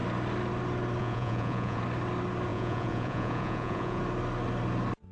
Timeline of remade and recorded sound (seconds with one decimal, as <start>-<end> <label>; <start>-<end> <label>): 0.0-1.0 recorded; 1.0-1.8 remade; 1.8-2.5 recorded; 2.5-4.0 remade; 4.0-5.1 recorded